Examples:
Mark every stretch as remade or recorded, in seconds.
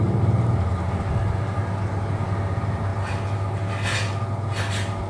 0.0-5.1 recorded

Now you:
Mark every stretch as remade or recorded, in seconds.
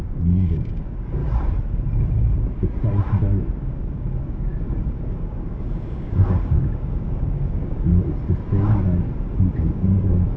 0.0-1.2 remade; 1.2-3.4 recorded; 3.4-7.9 remade; 7.9-9.6 recorded; 9.6-10.4 remade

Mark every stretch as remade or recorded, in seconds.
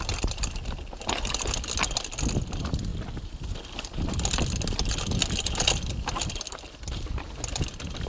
0.0-8.1 recorded